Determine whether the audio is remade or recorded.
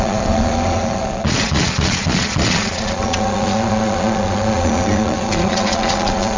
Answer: remade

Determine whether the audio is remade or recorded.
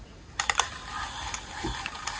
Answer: recorded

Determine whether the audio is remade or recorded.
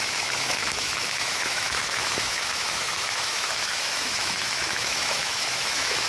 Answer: remade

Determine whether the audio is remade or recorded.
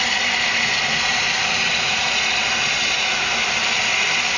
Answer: recorded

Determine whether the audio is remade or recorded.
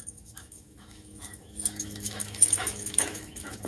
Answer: remade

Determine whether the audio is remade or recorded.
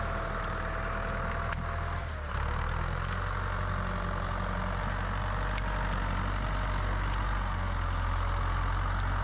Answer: recorded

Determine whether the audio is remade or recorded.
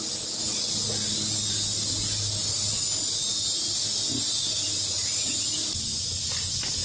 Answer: recorded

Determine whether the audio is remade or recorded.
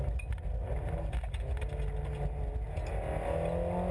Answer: recorded